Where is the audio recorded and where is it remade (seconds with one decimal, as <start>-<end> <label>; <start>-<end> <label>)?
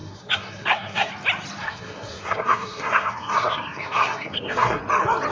0.0-1.1 remade; 1.1-1.6 recorded; 1.6-4.8 remade; 4.8-5.3 recorded